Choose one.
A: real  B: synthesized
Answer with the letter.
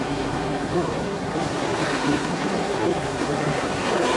B